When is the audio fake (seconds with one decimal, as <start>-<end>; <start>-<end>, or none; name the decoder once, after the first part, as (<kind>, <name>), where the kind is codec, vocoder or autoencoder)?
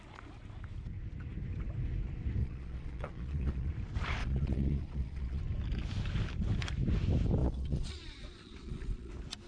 2.4-3.7 (vocoder, Vocos); 4.2-5.4; 7.4-9.1